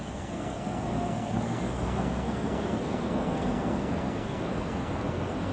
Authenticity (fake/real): fake